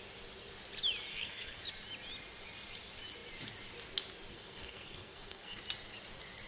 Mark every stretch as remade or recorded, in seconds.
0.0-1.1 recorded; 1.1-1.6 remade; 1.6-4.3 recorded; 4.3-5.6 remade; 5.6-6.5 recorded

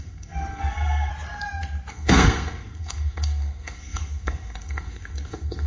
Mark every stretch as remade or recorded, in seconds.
0.0-1.1 remade; 1.1-1.9 recorded; 1.9-5.7 remade

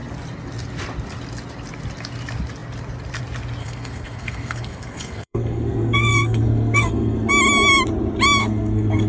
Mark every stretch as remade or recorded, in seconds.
0.0-3.6 recorded; 3.6-7.3 remade; 7.3-8.4 recorded; 8.4-9.1 remade

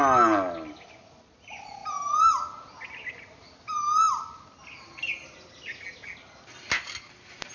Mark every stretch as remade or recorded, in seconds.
0.0-7.5 recorded

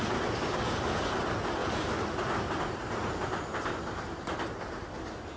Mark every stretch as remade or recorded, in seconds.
0.0-5.4 recorded

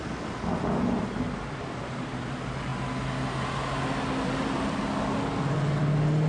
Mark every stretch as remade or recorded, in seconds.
0.0-6.3 recorded